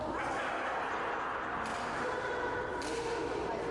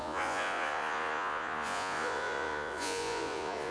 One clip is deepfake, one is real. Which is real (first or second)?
first